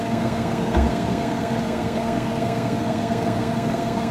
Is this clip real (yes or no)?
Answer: no